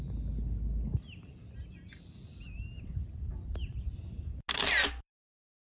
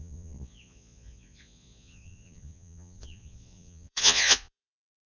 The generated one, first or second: second